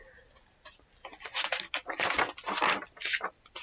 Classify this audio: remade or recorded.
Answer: recorded